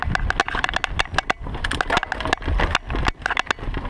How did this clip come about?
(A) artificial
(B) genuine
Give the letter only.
B